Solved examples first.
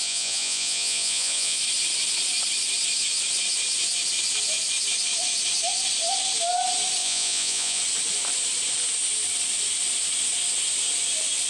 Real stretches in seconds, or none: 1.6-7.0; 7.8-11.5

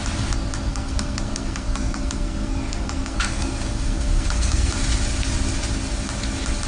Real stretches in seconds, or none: 0.0-0.7; 4.7-6.7

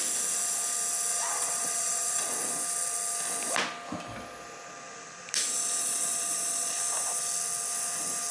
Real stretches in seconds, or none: 0.0-1.1; 2.5-5.8; 6.8-8.3

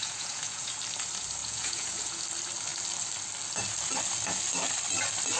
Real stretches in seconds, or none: 0.7-1.4; 2.2-5.4

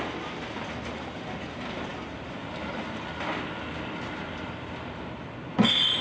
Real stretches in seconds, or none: 0.0-6.0

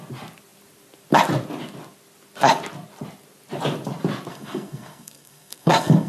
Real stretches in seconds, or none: 0.0-4.3

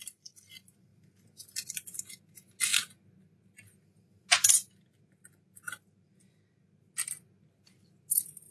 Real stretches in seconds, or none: 0.0-8.5

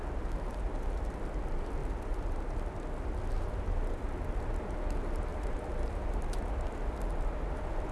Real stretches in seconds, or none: 0.0-5.3; 6.5-7.9